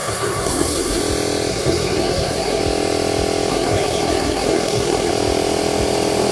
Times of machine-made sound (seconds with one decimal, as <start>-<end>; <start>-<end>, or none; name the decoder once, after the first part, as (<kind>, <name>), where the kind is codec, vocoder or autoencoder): 0.0-1.0 (codec, SNAC); 1.5-2.6; 3.5-5.1